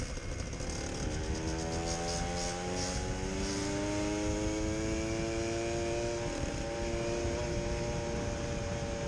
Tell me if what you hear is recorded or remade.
recorded